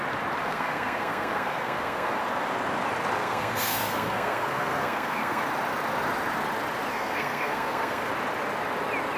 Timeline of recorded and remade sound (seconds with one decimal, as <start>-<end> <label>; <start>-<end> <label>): 0.0-0.4 recorded; 0.4-2.2 remade; 2.2-3.2 recorded; 3.2-5.4 remade; 5.4-6.9 recorded; 6.9-8.1 remade; 8.1-9.2 recorded